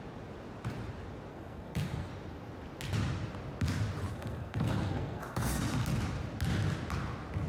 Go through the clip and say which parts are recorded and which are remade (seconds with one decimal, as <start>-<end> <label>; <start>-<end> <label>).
0.0-1.3 recorded; 1.3-2.1 remade; 2.1-4.1 recorded; 4.1-5.6 remade; 5.6-7.5 recorded